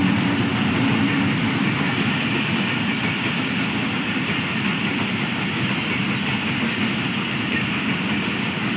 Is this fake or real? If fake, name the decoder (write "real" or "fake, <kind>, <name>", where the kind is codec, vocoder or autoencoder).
real